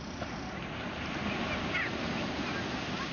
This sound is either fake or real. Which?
real